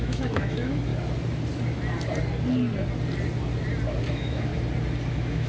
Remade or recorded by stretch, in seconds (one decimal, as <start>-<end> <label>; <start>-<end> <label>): 0.0-0.9 remade; 0.9-4.1 recorded; 4.1-4.5 remade; 4.5-5.1 recorded; 5.1-5.5 remade